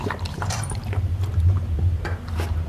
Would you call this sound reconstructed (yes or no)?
yes